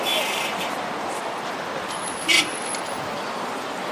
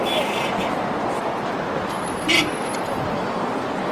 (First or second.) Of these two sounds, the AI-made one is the first